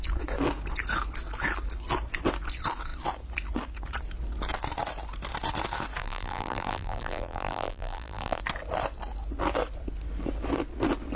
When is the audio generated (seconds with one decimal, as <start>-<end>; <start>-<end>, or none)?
6.0-8.4